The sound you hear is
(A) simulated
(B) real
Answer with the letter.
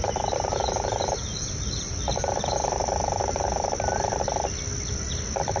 B